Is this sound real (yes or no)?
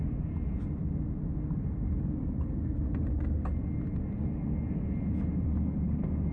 yes